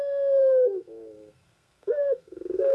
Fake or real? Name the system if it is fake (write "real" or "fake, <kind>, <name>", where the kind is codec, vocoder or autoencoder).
fake, codec, SNAC